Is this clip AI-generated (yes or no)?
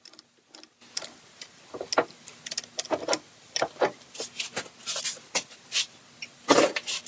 no